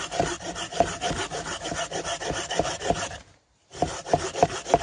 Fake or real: fake